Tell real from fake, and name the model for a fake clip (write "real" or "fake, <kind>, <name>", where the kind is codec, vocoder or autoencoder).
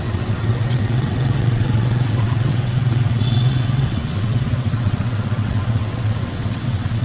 fake, vocoder, WaveNeXt